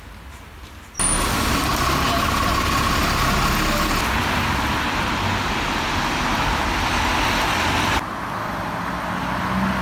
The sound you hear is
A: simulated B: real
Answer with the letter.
B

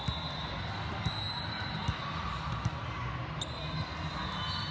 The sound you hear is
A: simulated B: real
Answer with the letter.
B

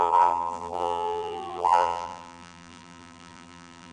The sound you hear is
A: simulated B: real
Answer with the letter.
A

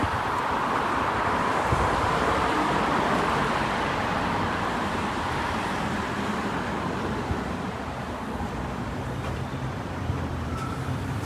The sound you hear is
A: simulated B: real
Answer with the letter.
A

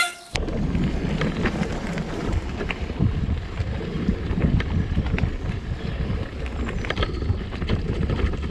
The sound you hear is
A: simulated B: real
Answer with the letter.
A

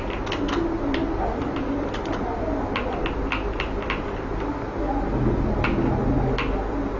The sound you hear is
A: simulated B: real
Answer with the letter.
B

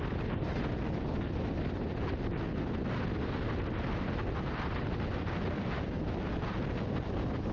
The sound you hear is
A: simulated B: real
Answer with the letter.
B